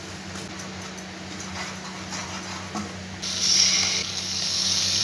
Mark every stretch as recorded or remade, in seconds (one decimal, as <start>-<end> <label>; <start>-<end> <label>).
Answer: 0.0-4.0 recorded; 4.0-5.0 remade